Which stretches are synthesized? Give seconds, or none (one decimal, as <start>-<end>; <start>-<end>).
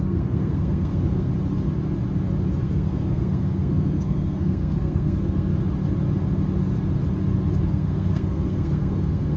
0.0-1.3; 2.6-5.5; 7.7-9.4